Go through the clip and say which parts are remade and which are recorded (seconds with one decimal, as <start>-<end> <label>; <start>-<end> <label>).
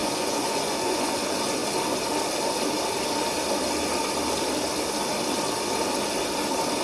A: 0.0-1.2 remade; 1.2-6.8 recorded